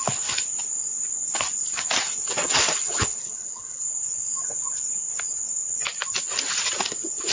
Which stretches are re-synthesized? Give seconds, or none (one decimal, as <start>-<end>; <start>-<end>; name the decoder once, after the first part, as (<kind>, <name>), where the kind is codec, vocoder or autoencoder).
2.4-3.8 (vocoder, WaveNeXt)